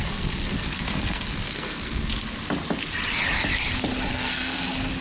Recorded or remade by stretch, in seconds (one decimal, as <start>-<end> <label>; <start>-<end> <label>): 0.0-2.1 remade; 2.1-4.1 recorded; 4.1-4.6 remade; 4.6-5.0 recorded